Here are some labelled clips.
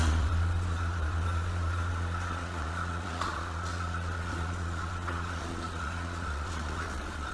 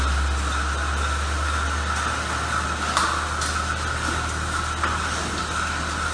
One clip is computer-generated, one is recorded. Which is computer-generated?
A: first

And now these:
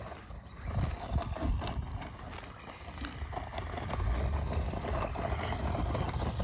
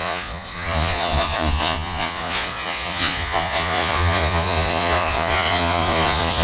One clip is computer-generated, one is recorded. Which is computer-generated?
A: second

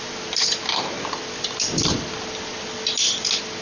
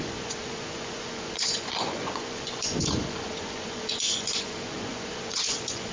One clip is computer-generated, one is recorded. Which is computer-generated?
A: second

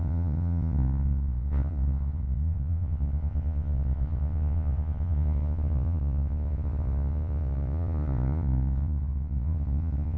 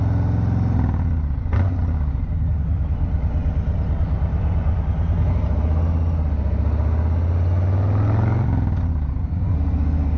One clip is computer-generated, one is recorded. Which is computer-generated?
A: first